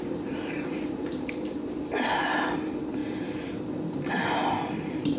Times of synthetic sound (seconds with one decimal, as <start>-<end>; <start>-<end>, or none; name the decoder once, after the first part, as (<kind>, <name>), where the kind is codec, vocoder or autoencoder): 0.0-3.0 (vocoder, BigVGAN v2); 3.9-5.2